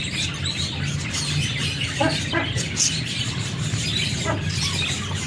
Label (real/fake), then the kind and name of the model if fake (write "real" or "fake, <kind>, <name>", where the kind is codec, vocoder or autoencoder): real